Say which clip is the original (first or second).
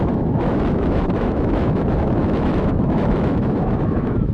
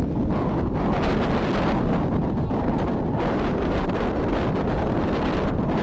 second